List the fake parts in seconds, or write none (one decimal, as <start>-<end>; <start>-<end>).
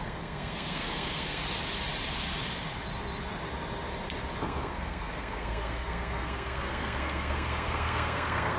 0.0-1.4; 4.4-8.6